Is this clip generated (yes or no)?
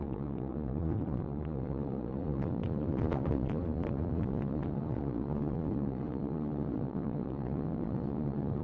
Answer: yes